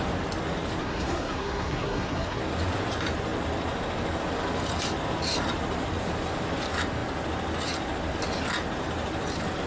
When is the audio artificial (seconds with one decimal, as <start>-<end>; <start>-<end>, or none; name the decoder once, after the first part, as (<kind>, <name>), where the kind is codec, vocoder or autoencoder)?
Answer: 0.8-2.4 (codec, SNAC)